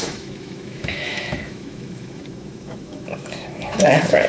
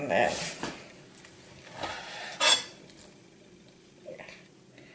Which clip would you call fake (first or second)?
first